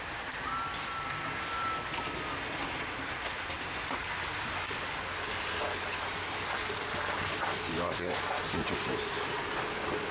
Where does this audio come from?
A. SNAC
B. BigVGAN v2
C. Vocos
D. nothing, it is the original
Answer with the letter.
D